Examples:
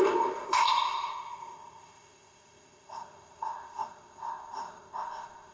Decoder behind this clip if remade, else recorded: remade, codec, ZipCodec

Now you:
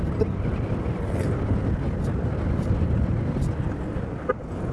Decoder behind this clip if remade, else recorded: recorded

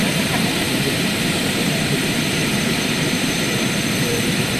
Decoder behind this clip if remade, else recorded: remade, vocoder, BigVGAN v2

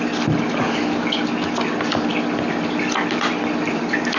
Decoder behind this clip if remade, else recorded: recorded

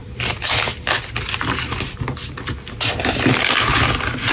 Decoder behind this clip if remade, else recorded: recorded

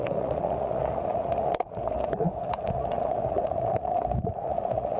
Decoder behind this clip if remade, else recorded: remade, vocoder, Vocos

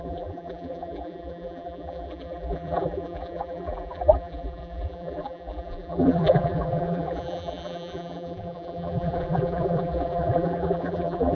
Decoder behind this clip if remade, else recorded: remade, vocoder, BigVGAN v2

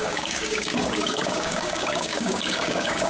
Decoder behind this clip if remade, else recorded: remade, codec, DAC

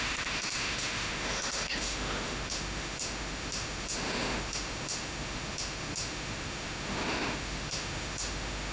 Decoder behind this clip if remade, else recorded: remade, autoencoder, DAC-VAE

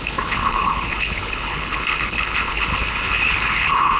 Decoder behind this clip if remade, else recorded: remade, codec, HILCodec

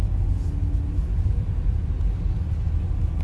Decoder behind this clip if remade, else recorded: recorded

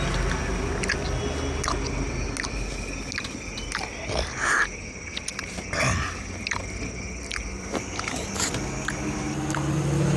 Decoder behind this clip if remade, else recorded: recorded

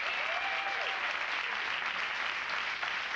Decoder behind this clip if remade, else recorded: recorded